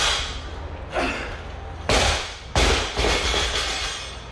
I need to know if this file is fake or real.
real